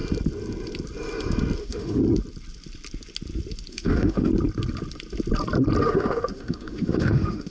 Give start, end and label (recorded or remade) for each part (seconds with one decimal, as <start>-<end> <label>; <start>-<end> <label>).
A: 0.0-1.6 recorded; 1.6-2.0 remade; 2.0-3.7 recorded; 3.7-4.3 remade; 4.3-5.8 recorded; 5.8-7.5 remade